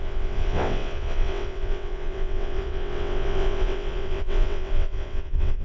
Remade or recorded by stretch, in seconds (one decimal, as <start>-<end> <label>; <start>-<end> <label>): 0.0-5.6 remade